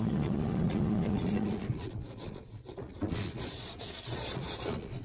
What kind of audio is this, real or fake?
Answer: fake